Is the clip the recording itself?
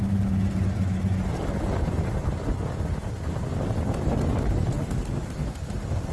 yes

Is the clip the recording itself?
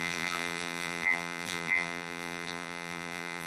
no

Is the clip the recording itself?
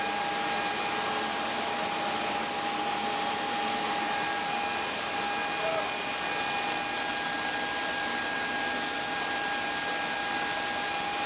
yes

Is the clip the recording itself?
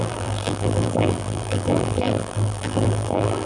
no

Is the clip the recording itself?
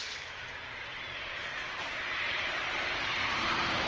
no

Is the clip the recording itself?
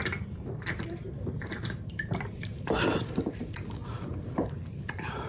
no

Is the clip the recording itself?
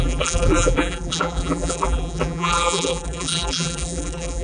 no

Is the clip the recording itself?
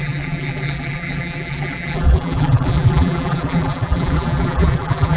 no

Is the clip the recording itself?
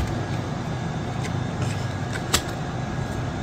no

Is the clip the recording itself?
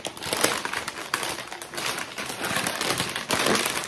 no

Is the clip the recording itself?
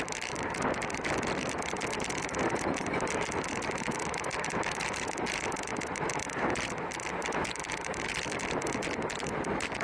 no